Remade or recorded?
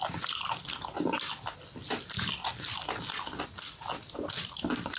recorded